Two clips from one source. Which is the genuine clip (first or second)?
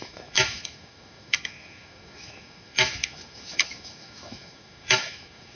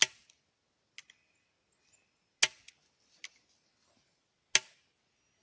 second